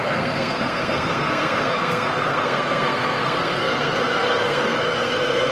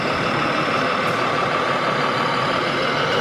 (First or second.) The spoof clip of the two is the first